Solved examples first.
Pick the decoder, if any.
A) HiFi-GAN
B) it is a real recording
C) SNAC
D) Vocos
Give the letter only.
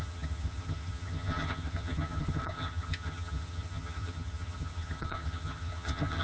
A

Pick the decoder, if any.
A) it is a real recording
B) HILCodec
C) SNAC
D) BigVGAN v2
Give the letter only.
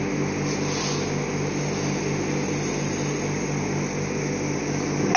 A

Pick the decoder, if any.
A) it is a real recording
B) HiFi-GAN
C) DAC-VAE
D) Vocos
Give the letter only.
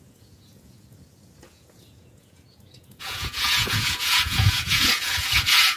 D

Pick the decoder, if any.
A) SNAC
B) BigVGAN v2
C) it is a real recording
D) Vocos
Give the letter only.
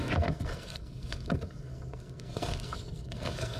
A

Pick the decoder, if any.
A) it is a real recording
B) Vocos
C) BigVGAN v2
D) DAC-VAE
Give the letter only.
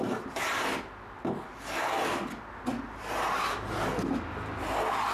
A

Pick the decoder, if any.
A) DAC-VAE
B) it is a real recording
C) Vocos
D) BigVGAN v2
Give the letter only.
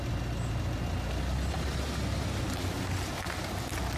B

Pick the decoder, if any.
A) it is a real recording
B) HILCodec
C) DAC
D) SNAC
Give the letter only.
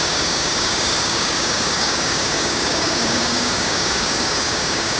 C